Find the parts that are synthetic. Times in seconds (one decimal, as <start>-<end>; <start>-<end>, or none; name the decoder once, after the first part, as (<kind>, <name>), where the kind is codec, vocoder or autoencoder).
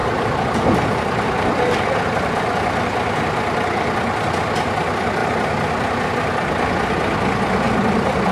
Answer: 0.0-1.8 (vocoder, BigVGAN v2); 5.2-6.1